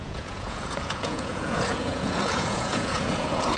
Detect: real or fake fake